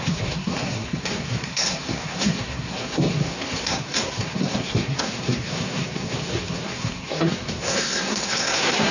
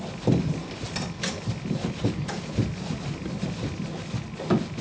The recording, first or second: second